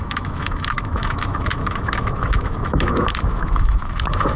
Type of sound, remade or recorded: remade